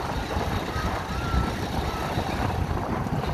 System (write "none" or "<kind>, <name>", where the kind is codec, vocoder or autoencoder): none